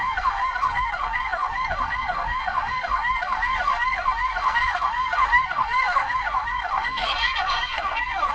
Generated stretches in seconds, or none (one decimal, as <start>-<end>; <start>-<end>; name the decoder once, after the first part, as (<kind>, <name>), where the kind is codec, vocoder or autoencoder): 0.0-8.3 (codec, SNAC)